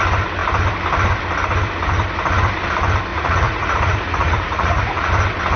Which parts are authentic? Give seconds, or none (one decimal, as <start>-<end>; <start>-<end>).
0.0-3.1; 5.1-5.6

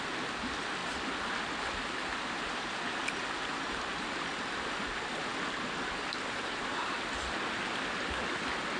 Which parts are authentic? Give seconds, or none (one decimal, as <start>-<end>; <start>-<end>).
0.0-8.8

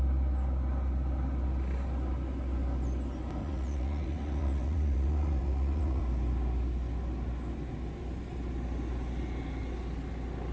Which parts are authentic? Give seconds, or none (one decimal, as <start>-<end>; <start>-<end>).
0.0-3.4; 6.0-10.5